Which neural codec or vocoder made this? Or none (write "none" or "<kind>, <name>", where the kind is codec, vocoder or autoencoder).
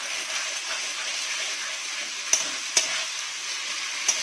none